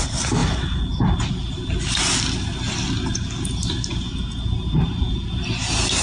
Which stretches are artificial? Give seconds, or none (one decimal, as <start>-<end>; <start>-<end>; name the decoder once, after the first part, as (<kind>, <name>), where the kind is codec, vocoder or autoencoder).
none